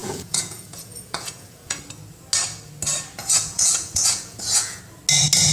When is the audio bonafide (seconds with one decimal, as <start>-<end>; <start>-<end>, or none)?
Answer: 1.8-3.2; 4.8-5.5